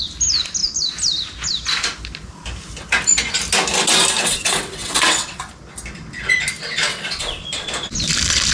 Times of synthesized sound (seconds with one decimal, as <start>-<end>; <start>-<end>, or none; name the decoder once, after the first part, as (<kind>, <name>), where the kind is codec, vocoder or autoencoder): 4.2-5.5 (vocoder, WaveNeXt); 6.9-7.4